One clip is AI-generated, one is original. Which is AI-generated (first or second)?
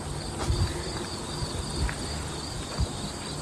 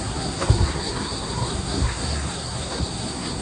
second